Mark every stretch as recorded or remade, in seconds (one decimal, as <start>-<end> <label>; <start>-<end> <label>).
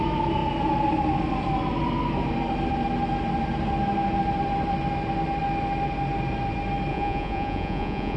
0.0-6.9 recorded; 6.9-8.2 remade